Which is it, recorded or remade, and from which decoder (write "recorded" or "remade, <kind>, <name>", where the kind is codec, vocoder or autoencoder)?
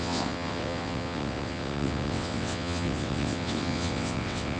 remade, vocoder, WaveNeXt